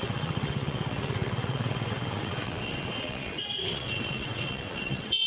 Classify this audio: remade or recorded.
remade